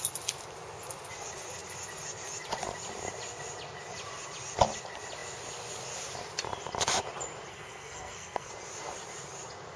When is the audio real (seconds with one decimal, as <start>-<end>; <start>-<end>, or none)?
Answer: 0.0-7.5; 8.5-9.8